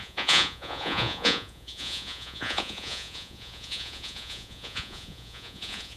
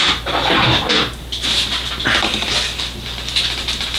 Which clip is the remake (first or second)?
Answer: first